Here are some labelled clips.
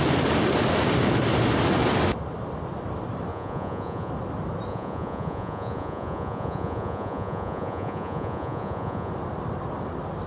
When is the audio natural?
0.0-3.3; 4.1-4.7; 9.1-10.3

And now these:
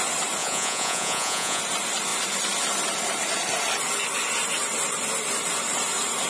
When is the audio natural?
0.0-0.4; 1.6-6.3